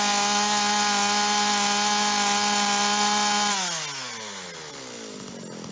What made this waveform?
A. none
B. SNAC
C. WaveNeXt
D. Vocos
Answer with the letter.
A